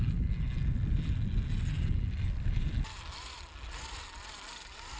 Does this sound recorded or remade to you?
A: recorded